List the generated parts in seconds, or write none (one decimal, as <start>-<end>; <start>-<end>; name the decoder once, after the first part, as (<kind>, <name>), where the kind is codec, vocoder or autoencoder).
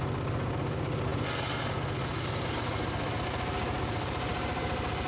none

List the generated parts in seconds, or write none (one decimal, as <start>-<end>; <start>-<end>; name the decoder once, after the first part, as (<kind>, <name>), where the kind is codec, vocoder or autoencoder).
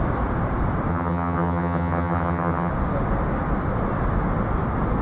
0.9-2.7 (vocoder, HiFi-GAN)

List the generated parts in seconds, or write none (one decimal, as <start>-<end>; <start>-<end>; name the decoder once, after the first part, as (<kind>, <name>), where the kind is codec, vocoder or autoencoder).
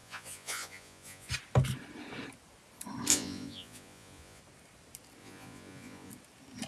0.0-1.3 (vocoder, Vocos); 3.1-4.4; 5.2-6.1